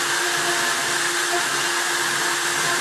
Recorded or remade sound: recorded